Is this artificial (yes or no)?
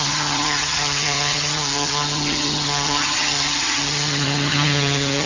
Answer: yes